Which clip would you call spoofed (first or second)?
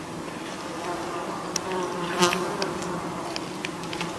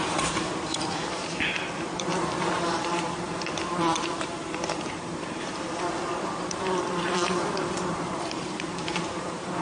second